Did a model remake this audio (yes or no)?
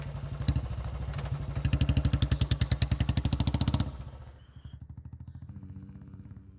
no